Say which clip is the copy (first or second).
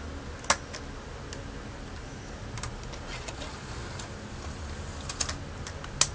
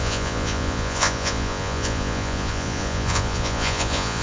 second